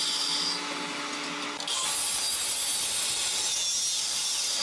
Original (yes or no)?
yes